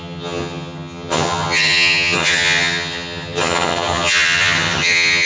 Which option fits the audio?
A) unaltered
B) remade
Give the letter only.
B